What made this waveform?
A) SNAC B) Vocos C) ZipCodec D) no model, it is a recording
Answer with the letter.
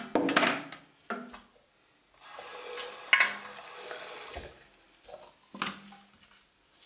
D